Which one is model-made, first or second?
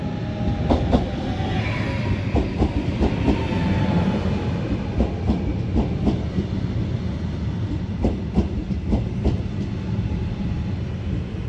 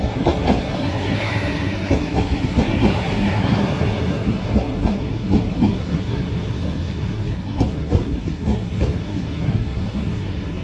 second